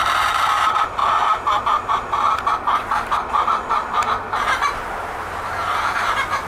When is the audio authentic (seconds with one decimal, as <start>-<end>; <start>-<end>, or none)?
none